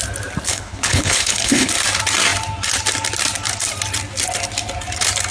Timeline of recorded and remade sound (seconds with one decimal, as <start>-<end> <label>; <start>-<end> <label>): 0.0-0.5 recorded; 0.5-1.7 remade; 1.7-5.3 recorded